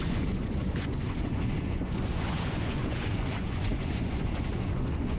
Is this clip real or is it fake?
fake